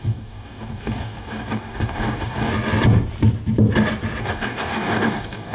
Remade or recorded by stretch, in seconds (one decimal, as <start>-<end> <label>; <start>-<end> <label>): 0.0-2.5 remade; 2.5-4.2 recorded; 4.2-5.5 remade